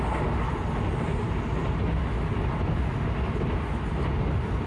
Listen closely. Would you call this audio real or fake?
real